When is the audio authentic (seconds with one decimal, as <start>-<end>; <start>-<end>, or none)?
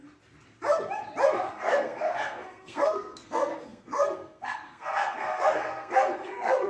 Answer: 0.0-1.5